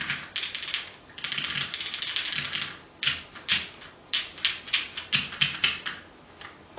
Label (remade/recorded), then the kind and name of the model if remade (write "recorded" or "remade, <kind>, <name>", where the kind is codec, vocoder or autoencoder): recorded